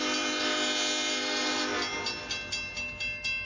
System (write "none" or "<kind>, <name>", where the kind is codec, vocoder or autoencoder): none